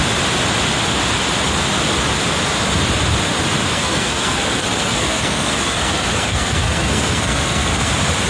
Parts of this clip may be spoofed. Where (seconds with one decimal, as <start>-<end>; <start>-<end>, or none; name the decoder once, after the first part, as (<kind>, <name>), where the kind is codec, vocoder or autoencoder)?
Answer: 3.7-7.9 (codec, SNAC)